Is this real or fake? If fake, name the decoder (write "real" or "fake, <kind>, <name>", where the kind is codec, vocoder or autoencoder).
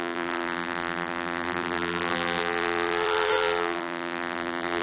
fake, vocoder, BigVGAN v2